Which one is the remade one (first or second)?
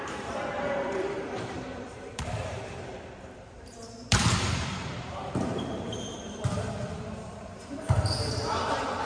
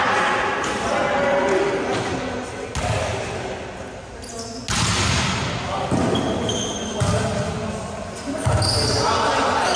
first